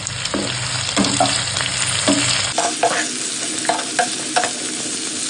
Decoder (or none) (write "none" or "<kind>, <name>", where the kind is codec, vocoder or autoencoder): none